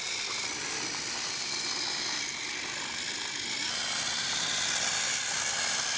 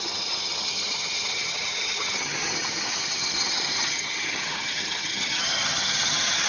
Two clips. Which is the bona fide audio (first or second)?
first